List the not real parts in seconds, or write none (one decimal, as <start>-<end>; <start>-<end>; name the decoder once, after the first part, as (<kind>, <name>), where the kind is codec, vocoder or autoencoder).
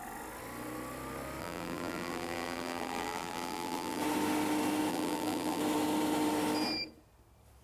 1.4-4.0 (vocoder, BigVGAN v2); 4.9-5.6